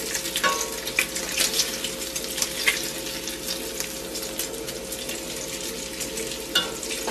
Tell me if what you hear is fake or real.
real